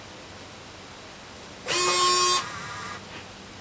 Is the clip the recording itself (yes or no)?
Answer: yes